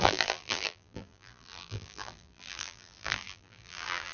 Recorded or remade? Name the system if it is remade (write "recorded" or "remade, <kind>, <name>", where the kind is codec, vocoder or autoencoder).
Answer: remade, vocoder, BigVGAN v2